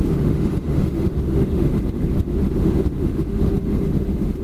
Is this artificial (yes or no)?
yes